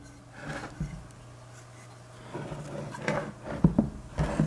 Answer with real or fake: real